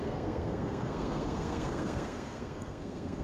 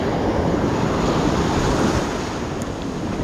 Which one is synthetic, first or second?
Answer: first